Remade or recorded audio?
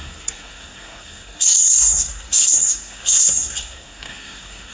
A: remade